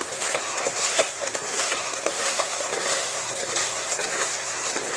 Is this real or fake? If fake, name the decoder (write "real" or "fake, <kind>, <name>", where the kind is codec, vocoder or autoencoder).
fake, codec, SNAC